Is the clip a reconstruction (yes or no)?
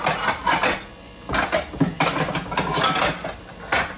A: no